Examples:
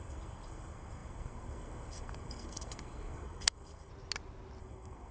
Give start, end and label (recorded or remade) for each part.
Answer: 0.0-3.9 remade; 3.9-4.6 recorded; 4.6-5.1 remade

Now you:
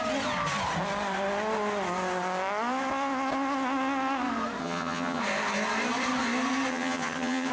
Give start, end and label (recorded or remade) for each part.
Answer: 0.0-4.6 recorded; 4.6-5.2 remade; 5.2-6.7 recorded; 6.7-7.5 remade

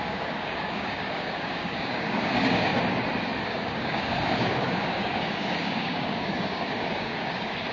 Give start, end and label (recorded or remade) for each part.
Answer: 0.0-2.7 remade; 2.7-3.4 recorded; 3.4-7.7 remade

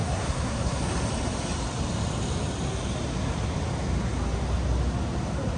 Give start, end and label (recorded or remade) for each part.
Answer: 0.0-0.8 remade; 0.8-5.6 recorded

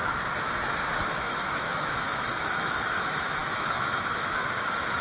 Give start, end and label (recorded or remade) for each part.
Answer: 0.0-1.0 recorded; 1.0-5.0 remade